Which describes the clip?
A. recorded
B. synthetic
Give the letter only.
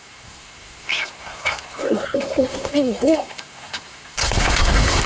B